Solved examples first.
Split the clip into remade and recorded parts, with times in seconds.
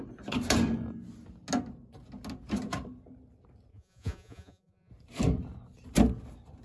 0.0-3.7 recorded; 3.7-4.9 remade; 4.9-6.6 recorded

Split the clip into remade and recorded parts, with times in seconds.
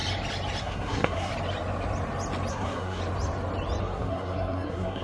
0.0-0.6 recorded; 0.6-1.3 remade; 1.3-2.5 recorded; 2.5-3.0 remade; 3.0-3.8 recorded; 3.8-5.0 remade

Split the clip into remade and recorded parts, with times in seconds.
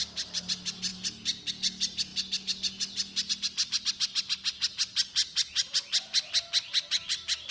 0.0-7.5 recorded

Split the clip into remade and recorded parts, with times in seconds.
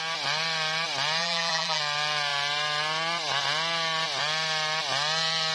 0.0-1.2 recorded; 1.2-1.8 remade; 1.8-5.5 recorded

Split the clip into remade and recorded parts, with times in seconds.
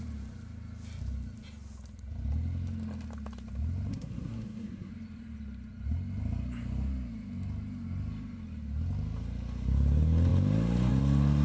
0.0-3.9 recorded; 3.9-4.9 remade; 4.9-11.4 recorded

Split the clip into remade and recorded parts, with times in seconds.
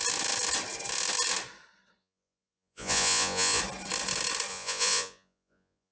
0.0-2.0 recorded; 2.0-3.6 remade; 3.6-4.5 recorded; 4.5-5.9 remade